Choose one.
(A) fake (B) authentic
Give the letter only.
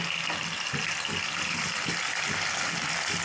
B